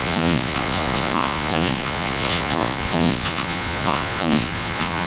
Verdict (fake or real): fake